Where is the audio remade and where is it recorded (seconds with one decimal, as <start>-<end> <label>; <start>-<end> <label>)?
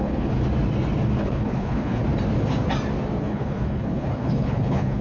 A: 0.0-0.4 remade; 0.4-1.2 recorded; 1.2-2.0 remade; 2.0-3.2 recorded; 3.2-5.0 remade